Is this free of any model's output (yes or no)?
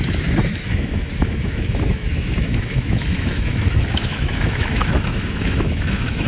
no